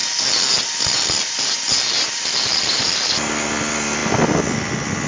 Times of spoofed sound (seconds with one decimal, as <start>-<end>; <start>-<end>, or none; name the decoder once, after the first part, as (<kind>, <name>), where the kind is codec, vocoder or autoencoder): none